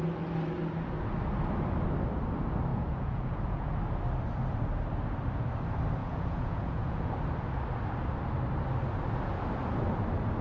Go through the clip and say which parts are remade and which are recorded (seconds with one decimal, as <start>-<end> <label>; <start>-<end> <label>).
0.0-2.7 recorded; 2.7-3.7 remade; 3.7-6.0 recorded; 6.0-7.1 remade; 7.1-10.4 recorded